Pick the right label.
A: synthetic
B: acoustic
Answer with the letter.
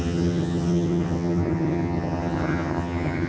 A